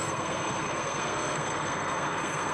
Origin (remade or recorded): remade